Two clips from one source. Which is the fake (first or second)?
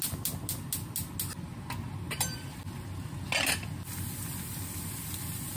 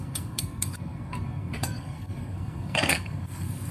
second